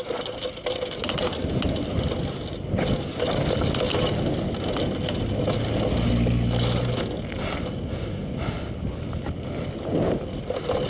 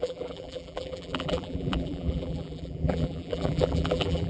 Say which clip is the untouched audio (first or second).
first